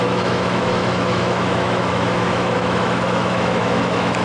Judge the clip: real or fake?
fake